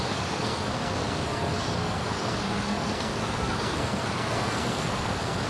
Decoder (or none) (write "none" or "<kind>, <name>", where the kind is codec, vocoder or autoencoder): codec, SNAC